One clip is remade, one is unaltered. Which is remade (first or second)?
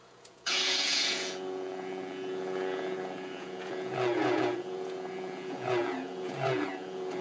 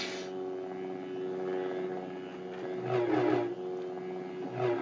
first